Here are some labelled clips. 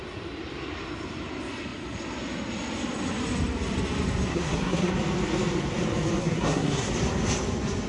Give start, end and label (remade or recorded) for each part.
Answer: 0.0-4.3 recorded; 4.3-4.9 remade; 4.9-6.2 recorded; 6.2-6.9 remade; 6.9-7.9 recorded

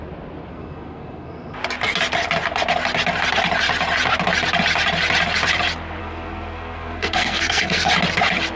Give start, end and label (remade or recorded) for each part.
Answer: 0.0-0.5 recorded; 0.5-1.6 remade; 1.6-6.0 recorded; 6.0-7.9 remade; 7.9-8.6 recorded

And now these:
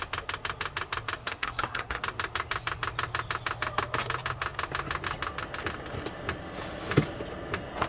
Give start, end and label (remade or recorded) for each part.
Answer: 0.0-1.2 recorded; 1.2-2.0 remade; 2.0-7.9 recorded

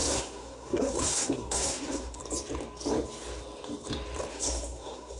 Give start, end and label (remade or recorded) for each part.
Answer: 0.0-2.2 remade; 2.2-4.3 recorded; 4.3-5.2 remade